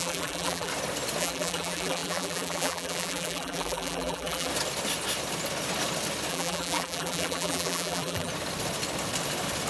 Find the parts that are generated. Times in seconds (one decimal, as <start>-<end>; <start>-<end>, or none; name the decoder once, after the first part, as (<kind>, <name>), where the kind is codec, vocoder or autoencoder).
0.0-0.7 (vocoder, BigVGAN v2); 1.2-4.5; 6.3-8.3